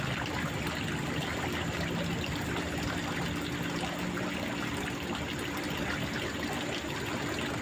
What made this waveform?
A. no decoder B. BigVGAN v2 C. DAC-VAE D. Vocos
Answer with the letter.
A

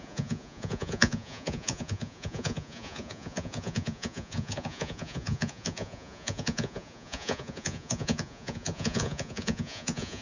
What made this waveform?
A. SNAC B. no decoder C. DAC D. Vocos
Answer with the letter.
D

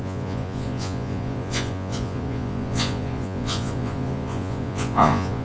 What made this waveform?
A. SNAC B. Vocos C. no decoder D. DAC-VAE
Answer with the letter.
B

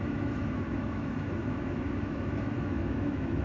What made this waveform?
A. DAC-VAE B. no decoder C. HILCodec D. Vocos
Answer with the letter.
A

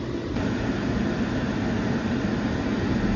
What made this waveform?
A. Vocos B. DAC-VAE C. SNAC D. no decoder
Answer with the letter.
D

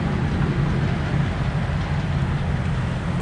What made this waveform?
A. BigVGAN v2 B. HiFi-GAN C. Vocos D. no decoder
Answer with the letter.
D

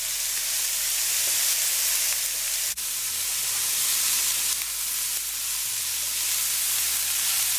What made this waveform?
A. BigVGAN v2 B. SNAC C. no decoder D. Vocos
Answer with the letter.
C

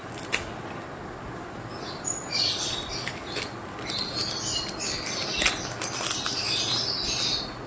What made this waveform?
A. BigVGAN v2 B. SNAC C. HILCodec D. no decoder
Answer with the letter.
D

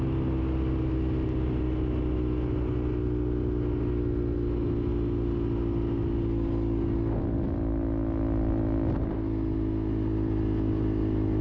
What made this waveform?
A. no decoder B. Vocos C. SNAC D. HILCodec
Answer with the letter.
A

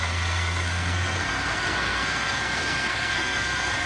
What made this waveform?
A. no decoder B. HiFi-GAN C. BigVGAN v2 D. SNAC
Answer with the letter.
D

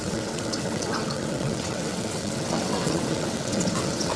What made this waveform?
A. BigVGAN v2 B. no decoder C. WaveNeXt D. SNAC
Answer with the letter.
C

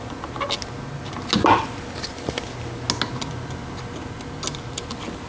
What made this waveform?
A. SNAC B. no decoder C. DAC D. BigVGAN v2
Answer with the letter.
B